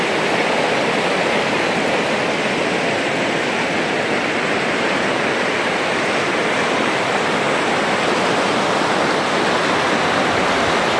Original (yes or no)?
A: no